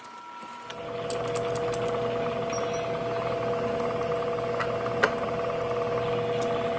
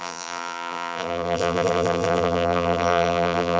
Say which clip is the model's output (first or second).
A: second